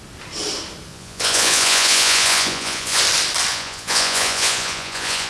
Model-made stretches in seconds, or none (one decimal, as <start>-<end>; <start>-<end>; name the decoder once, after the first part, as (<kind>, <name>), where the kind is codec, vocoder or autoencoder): 0.9-3.0 (vocoder, Vocos); 3.5-5.3